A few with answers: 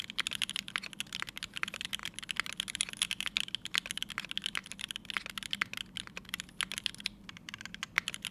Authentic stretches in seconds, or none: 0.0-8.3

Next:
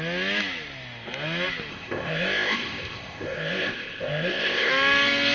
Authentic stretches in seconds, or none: 0.0-1.7; 4.7-5.3

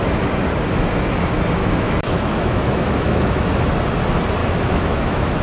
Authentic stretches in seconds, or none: 0.0-1.6; 3.5-4.4

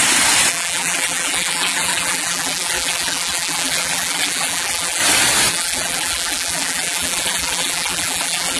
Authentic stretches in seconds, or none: 0.0-0.5; 5.0-5.5

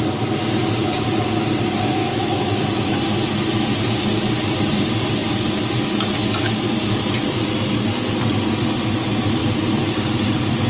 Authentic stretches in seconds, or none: 0.0-2.0; 2.6-10.7

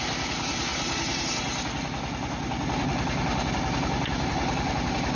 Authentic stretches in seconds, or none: 0.0-0.7; 1.3-5.2